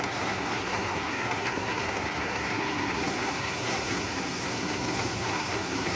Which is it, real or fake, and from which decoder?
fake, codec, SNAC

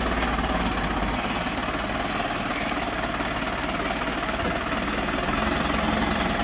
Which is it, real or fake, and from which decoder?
real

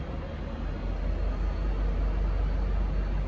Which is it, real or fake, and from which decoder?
real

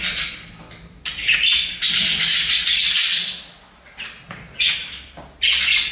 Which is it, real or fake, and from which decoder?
real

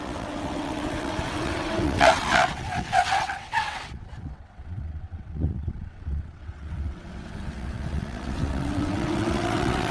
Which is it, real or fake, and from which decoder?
fake, vocoder, WaveNeXt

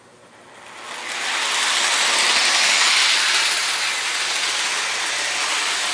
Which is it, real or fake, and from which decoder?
real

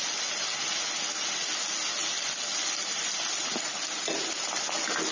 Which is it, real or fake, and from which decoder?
real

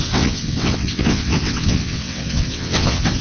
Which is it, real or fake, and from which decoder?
fake, vocoder, WaveNeXt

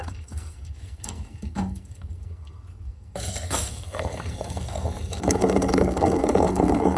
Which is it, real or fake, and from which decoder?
fake, codec, SNAC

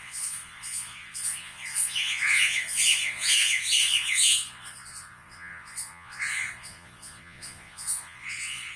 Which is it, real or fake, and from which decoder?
fake, vocoder, Vocos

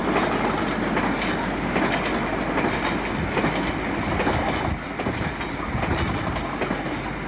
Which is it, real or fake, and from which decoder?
real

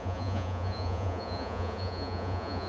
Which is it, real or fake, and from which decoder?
fake, vocoder, Vocos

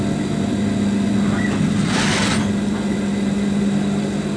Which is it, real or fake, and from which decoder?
real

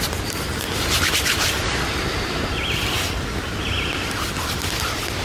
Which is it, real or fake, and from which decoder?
real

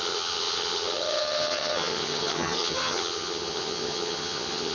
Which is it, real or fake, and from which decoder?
fake, vocoder, HiFi-GAN